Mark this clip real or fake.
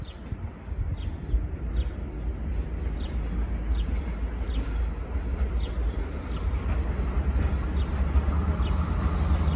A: real